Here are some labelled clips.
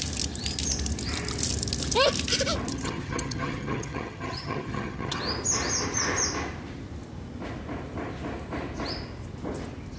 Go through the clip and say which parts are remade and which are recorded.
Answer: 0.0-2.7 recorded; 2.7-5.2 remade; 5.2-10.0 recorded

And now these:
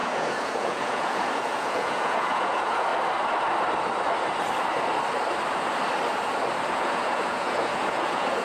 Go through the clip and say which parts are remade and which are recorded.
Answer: 0.0-2.9 remade; 2.9-6.7 recorded; 6.7-8.4 remade

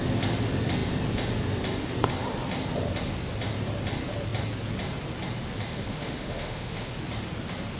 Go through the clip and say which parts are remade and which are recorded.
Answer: 0.0-5.7 recorded; 5.7-6.9 remade; 6.9-7.8 recorded